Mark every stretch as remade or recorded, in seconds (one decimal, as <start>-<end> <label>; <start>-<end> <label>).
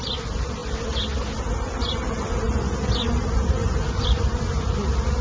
0.0-5.2 recorded